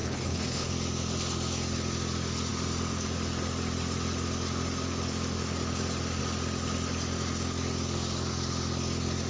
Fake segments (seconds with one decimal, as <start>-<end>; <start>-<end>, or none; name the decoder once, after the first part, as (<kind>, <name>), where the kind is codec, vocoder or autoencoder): 0.0-0.7 (codec, HILCodec)